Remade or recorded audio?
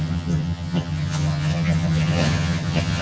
remade